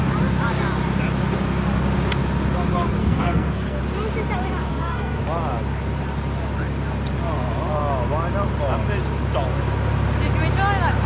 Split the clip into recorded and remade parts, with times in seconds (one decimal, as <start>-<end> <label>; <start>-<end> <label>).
0.0-3.0 recorded; 3.0-3.8 remade; 3.8-4.7 recorded; 4.7-5.2 remade; 5.2-11.1 recorded